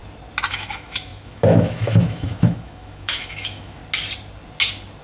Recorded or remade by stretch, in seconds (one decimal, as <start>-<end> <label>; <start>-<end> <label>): 0.0-0.5 recorded; 0.5-3.8 remade; 3.8-5.0 recorded